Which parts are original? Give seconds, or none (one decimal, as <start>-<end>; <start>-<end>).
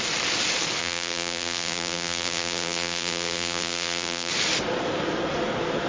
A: 0.0-0.8; 4.3-5.9